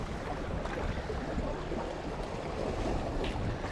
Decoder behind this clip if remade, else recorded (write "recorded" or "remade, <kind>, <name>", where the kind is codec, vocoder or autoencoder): recorded